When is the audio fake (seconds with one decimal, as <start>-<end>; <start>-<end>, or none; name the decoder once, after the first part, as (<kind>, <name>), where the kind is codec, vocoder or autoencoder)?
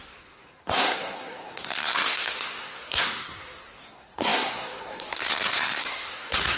0.0-6.6 (codec, SNAC)